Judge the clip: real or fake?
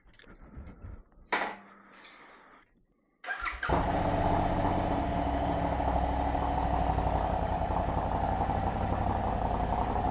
real